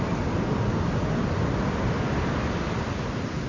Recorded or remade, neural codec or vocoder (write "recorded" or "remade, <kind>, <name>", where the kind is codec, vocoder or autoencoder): recorded